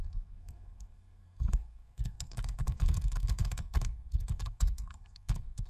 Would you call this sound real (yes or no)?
no